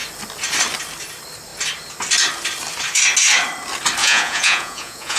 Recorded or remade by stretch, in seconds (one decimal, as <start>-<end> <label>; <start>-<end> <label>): 0.0-4.0 recorded; 4.0-5.2 remade